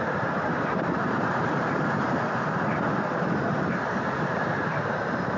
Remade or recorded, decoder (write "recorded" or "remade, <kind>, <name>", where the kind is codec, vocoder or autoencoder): remade, vocoder, BigVGAN v2